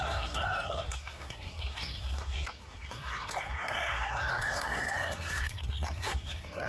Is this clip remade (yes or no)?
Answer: yes